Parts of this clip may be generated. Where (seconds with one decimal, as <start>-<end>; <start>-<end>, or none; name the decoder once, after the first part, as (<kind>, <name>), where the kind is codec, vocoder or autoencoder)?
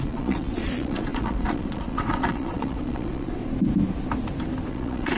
0.0-3.4 (vocoder, Vocos); 4.7-5.2